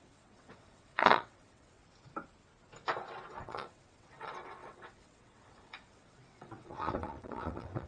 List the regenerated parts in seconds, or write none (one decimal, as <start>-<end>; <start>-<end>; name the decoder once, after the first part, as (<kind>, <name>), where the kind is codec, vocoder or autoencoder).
0.0-1.8 (vocoder, WaveNeXt); 3.3-7.9